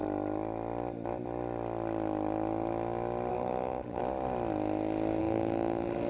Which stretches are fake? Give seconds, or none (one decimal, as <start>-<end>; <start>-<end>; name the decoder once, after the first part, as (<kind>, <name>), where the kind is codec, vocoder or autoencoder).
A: 3.3-4.0 (autoencoder, DAC-VAE); 5.2-6.1